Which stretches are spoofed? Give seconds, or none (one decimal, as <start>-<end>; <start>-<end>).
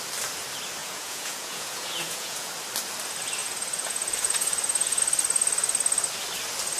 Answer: 0.8-2.5; 3.4-5.0